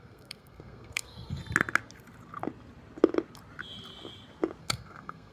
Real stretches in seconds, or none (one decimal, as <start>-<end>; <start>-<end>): 1.4-4.6